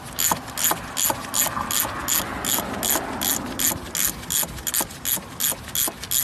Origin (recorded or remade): recorded